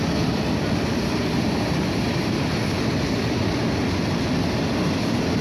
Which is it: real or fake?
real